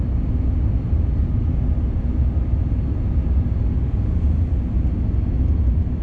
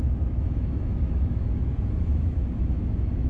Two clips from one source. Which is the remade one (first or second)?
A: second